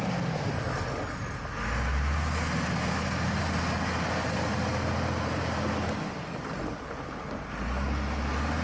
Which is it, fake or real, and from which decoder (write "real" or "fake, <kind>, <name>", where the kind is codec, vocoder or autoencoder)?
real